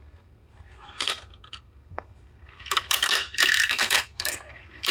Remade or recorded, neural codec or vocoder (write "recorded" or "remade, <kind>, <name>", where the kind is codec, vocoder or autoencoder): remade, codec, SNAC